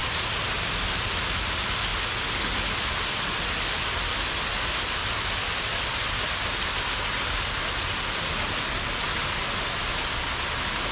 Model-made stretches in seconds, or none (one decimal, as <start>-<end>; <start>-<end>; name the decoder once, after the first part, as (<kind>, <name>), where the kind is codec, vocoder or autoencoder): none